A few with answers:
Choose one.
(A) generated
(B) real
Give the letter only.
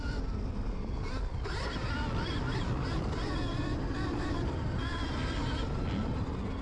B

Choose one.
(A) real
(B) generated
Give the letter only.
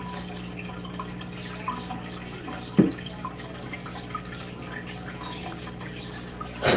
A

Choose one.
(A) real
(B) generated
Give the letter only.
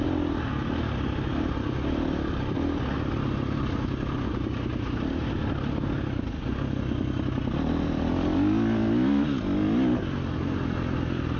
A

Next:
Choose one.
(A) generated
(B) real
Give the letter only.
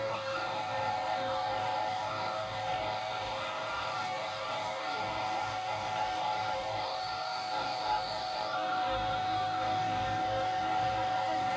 A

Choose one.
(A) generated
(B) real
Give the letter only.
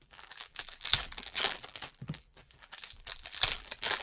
A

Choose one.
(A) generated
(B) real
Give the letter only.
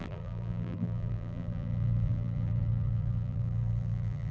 A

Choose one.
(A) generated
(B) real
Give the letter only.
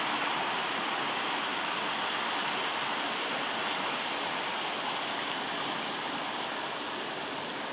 B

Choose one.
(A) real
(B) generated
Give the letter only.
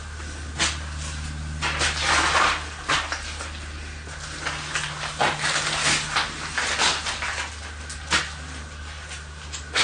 A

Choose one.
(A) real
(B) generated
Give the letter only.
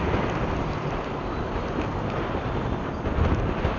A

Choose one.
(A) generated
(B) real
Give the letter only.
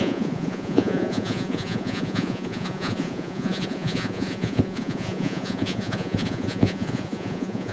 A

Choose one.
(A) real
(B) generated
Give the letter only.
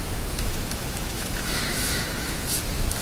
B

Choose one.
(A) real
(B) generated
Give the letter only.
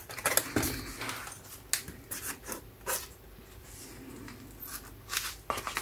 A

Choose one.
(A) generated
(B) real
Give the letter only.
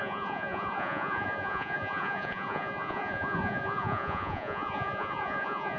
A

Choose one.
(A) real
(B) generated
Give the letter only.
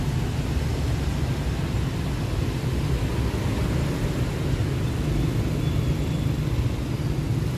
A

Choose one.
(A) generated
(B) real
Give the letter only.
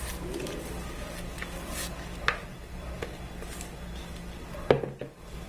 B